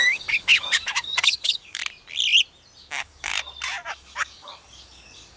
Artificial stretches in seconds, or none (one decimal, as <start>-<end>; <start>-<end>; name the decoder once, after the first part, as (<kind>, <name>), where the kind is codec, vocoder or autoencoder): 0.0-1.8 (codec, DAC); 2.9-3.3; 3.9-5.4